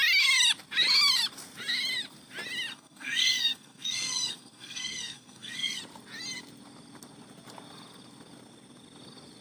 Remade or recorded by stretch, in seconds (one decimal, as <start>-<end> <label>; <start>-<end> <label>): 0.0-2.7 recorded; 2.7-5.8 remade; 5.8-9.4 recorded

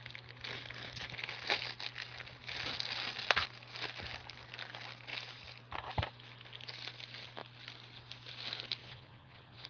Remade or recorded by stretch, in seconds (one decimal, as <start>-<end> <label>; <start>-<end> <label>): 0.0-8.8 recorded; 8.8-9.7 remade

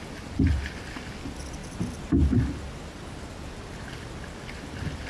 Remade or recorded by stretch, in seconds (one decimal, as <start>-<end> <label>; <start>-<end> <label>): 0.0-5.1 recorded

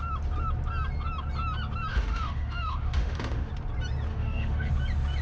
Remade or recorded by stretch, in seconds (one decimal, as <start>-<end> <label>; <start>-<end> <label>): 0.0-1.9 recorded; 1.9-3.5 remade; 3.5-4.1 recorded; 4.1-4.7 remade; 4.7-5.2 recorded

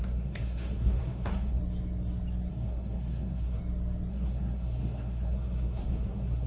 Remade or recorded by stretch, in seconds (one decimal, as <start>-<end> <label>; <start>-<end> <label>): 0.0-1.6 remade; 1.6-2.5 recorded; 2.5-3.6 remade; 3.6-4.1 recorded; 4.1-6.5 remade

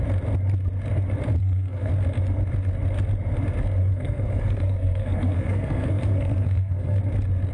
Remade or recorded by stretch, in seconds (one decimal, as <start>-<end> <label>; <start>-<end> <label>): 0.0-1.4 recorded; 1.4-1.9 remade; 1.9-3.8 recorded; 3.8-7.0 remade; 7.0-7.5 recorded

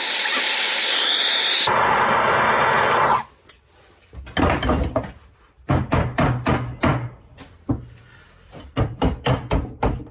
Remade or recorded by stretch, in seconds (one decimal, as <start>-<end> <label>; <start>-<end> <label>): 0.0-10.1 recorded

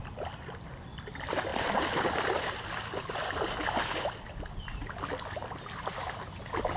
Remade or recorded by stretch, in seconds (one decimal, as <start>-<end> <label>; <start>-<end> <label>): 0.0-6.8 recorded